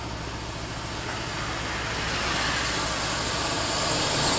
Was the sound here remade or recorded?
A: recorded